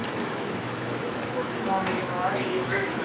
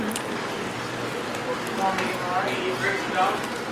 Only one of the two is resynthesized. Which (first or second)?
first